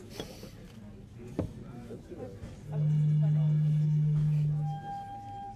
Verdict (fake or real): real